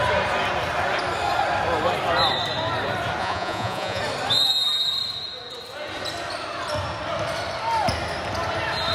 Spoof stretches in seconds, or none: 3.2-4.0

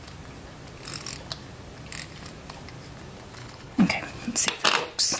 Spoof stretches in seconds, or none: 3.4-3.9

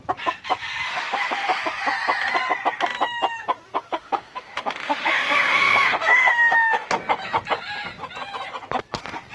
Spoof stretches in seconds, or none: 0.9-1.6; 3.9-6.9

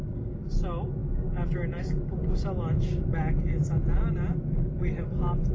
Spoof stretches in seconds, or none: none